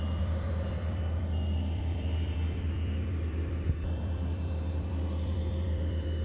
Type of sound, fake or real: fake